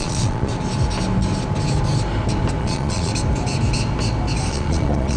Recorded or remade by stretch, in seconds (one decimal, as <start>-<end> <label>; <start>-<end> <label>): 0.0-0.5 remade; 0.5-2.6 recorded; 2.6-3.1 remade; 3.1-4.5 recorded; 4.5-5.2 remade

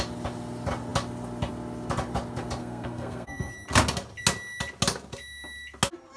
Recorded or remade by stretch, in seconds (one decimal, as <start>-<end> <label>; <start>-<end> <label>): 0.0-2.6 recorded; 2.6-3.5 remade; 3.5-6.2 recorded

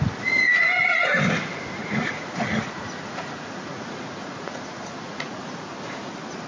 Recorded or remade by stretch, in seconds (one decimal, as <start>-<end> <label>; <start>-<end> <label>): 0.0-1.8 recorded; 1.8-5.7 remade; 5.7-6.5 recorded

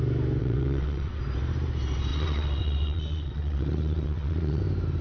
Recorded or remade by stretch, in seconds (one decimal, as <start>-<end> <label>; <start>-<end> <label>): 0.0-0.4 recorded; 0.4-1.2 remade; 1.2-2.1 recorded; 2.1-4.6 remade; 4.6-5.0 recorded